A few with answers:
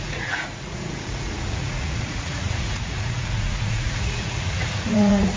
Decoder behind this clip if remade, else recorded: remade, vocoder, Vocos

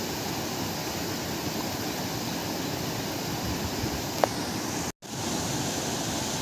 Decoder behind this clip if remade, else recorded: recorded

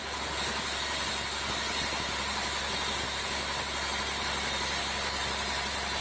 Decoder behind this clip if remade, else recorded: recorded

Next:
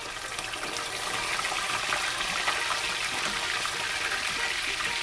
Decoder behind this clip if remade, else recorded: recorded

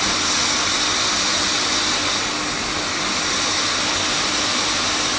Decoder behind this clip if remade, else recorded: recorded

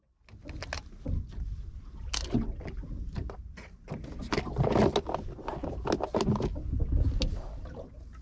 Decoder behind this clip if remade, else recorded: recorded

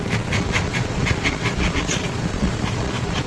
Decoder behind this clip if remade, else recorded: remade, vocoder, Vocos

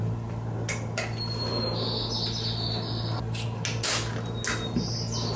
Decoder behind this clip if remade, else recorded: recorded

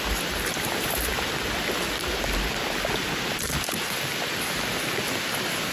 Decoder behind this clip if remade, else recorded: recorded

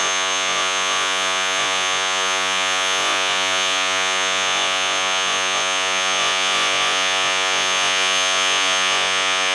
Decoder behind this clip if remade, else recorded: remade, vocoder, Vocos